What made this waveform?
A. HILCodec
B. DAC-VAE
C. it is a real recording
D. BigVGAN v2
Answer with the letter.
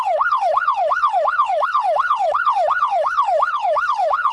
A